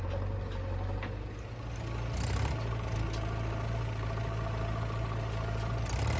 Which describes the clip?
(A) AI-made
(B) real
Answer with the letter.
B